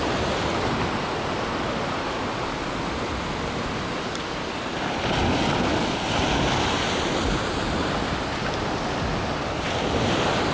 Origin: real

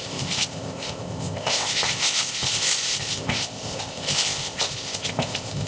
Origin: fake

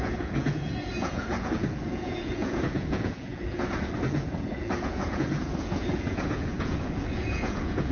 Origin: fake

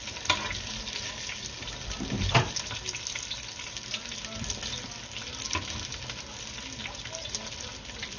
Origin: real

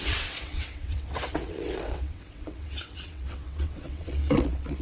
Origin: fake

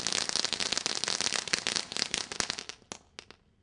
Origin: real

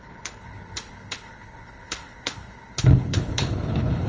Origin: fake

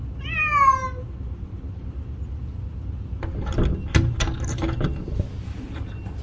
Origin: real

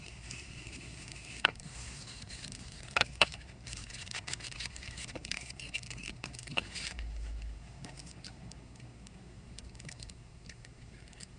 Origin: fake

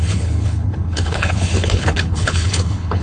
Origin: fake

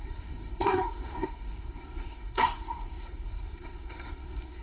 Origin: fake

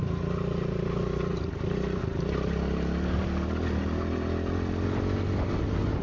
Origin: real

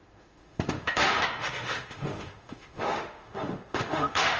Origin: fake